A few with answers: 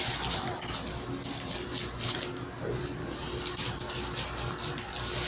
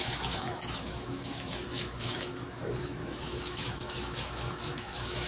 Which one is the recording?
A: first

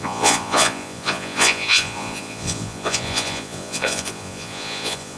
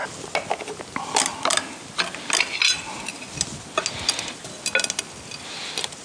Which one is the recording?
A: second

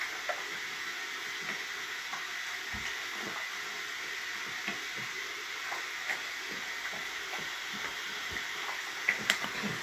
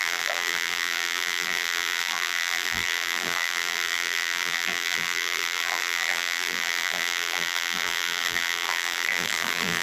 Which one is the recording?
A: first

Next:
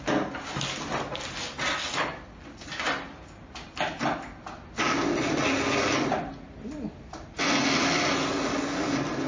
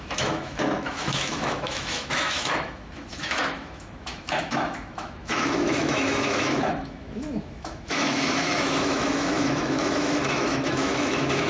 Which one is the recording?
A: first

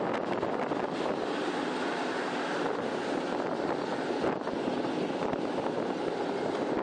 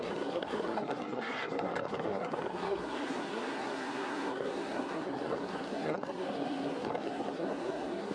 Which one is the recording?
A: first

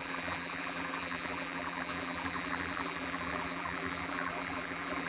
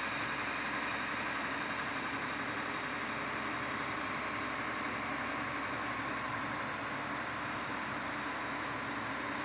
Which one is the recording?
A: second